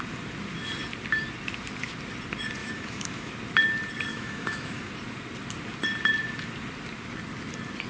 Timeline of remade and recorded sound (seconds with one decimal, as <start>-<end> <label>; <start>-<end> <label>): 0.0-2.6 recorded; 2.6-3.3 remade; 3.3-4.1 recorded; 4.1-4.9 remade; 4.9-7.9 recorded